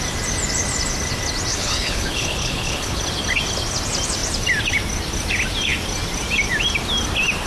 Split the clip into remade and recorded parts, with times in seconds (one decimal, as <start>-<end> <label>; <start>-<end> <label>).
0.0-1.5 recorded; 1.5-3.0 remade; 3.0-7.5 recorded